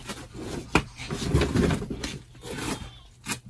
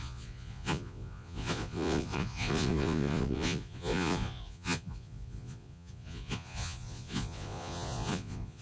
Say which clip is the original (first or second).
first